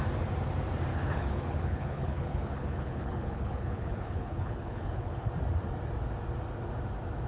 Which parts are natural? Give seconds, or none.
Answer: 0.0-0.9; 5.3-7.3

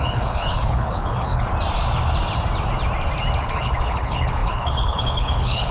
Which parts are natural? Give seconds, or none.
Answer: 1.5-3.4

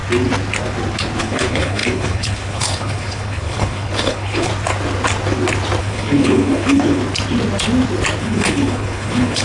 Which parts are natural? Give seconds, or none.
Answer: 0.0-1.2; 4.5-5.8; 7.0-8.2